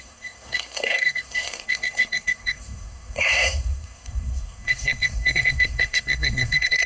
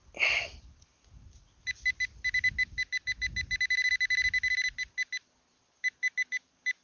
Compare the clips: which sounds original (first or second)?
second